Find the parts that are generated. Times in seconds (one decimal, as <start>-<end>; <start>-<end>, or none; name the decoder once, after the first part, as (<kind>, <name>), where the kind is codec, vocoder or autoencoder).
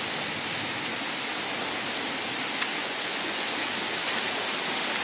2.8-3.5 (vocoder, Vocos)